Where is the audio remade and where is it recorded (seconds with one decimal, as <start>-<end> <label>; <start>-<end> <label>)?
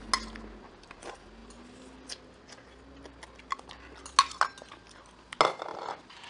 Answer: 0.0-6.3 recorded